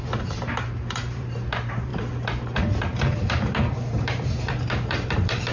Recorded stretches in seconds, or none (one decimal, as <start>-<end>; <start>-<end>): none